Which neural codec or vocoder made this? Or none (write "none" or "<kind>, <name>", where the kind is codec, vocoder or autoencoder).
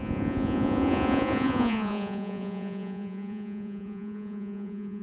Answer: vocoder, Vocos